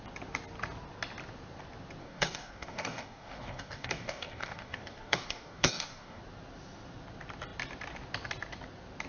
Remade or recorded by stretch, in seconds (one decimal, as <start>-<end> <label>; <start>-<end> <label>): 0.0-2.0 recorded; 2.0-6.2 remade; 6.2-9.1 recorded